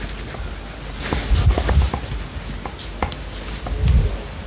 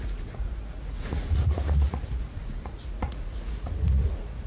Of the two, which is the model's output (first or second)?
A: second